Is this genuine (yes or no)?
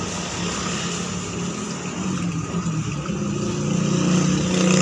yes